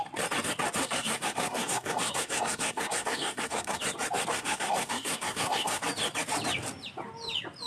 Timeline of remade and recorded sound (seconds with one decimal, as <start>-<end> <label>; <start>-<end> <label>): 0.0-0.8 recorded; 0.8-3.8 remade; 3.8-4.3 recorded; 4.3-5.8 remade; 5.8-7.7 recorded

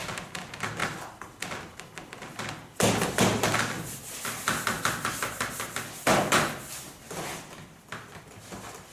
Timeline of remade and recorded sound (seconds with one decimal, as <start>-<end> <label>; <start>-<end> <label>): 0.0-8.9 recorded